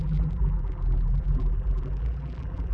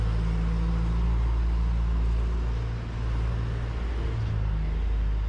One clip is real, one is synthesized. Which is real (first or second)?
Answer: second